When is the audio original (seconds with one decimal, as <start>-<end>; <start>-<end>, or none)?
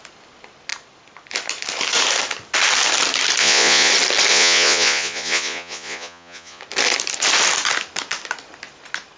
0.0-3.4; 3.9-4.3; 6.6-9.2